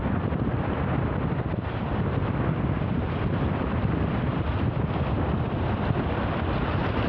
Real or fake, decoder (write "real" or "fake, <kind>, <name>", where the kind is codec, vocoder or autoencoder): fake, vocoder, BigVGAN v2